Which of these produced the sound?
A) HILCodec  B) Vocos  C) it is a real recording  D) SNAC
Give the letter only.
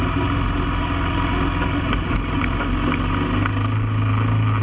C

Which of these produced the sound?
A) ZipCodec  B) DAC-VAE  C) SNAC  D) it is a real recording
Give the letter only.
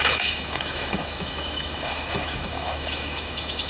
B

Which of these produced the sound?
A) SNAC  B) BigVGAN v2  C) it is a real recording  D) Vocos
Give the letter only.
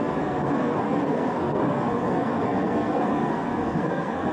A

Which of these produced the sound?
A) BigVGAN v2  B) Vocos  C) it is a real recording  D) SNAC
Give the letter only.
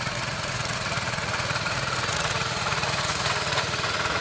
B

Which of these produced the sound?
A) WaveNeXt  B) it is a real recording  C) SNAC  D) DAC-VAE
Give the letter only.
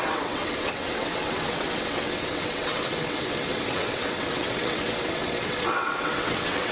A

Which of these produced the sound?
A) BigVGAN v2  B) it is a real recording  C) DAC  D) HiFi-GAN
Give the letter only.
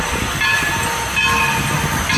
B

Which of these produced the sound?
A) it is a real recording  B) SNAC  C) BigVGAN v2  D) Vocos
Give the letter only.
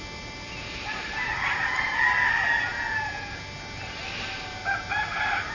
A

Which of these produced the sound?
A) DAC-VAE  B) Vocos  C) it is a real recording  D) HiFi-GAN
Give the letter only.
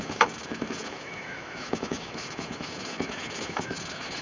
A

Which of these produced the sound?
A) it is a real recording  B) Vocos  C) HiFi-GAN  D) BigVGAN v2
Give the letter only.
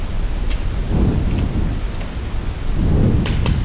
A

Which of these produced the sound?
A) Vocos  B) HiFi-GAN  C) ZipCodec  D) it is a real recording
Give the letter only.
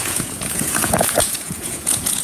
A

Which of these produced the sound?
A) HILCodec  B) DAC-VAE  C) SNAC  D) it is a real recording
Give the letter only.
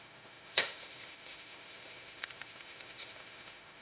B